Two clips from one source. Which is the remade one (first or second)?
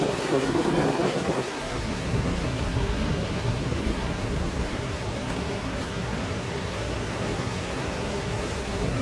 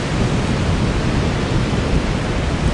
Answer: first